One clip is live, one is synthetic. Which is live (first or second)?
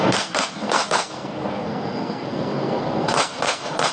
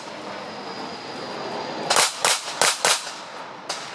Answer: second